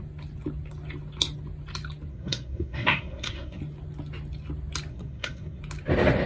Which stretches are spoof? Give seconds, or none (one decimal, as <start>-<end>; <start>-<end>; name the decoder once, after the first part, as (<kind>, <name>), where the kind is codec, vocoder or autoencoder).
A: 2.1-3.6 (codec, SNAC); 4.9-5.6